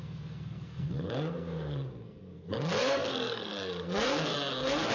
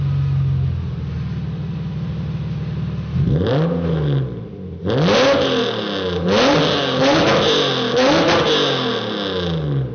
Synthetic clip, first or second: first